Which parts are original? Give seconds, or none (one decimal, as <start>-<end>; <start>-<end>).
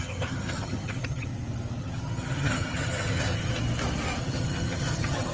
1.3-1.8; 3.5-4.2